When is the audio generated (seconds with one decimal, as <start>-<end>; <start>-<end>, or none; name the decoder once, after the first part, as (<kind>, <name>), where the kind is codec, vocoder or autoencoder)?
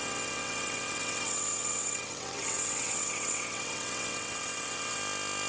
0.0-5.0 (vocoder, WaveNeXt)